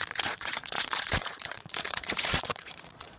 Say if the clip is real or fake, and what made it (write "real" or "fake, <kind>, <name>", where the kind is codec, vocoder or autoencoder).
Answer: fake, vocoder, Vocos